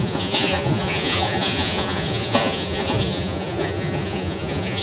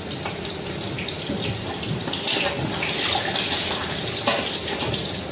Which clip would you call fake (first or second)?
first